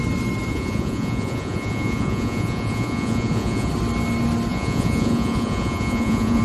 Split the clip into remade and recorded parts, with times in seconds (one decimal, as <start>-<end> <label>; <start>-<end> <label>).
0.0-0.5 recorded; 0.5-3.7 remade; 3.7-4.5 recorded; 4.5-6.4 remade